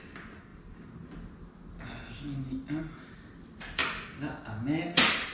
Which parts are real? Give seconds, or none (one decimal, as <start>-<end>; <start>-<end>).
0.0-5.3

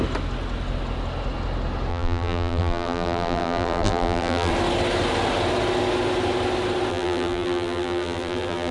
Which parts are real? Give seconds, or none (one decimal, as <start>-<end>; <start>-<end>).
0.0-1.9; 4.5-6.9

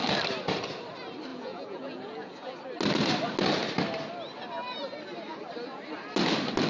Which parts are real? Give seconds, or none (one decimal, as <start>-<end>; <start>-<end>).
0.0-1.3; 2.6-6.7

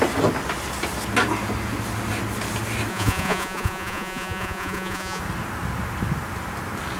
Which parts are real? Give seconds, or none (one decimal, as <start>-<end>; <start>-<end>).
0.0-2.9; 5.2-7.0

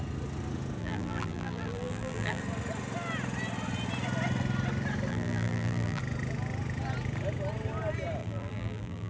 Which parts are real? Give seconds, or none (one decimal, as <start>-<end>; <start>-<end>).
0.0-0.8; 2.4-5.1; 6.0-8.2

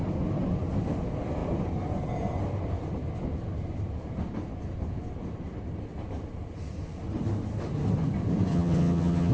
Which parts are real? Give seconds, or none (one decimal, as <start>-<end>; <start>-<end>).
0.0-8.5

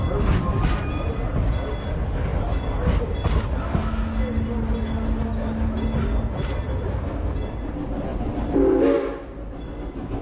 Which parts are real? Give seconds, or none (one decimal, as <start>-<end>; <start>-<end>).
0.0-10.2

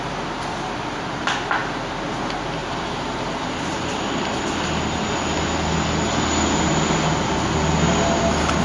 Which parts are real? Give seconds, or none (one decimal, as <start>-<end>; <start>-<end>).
0.0-8.6